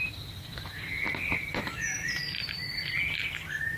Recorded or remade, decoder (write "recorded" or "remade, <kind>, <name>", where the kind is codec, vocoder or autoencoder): recorded